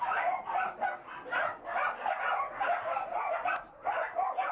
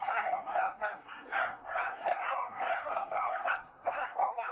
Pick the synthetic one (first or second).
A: second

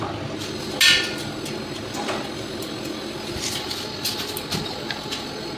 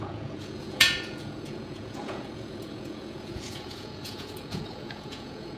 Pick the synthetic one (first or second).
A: second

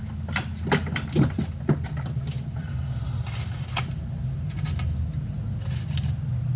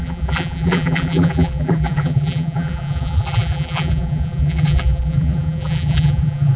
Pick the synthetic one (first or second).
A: second